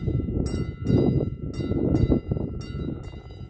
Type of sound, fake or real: real